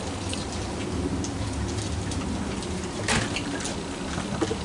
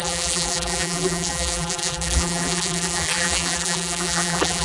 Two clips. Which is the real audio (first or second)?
first